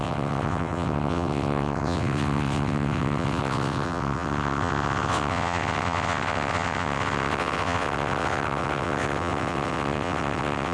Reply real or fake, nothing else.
fake